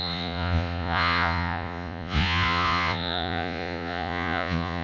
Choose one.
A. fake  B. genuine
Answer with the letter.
A